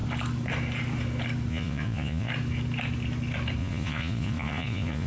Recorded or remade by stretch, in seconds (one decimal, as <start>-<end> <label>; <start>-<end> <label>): 0.0-1.5 recorded; 1.5-2.3 remade; 2.3-3.6 recorded; 3.6-5.1 remade